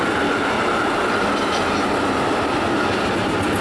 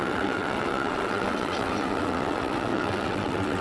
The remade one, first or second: second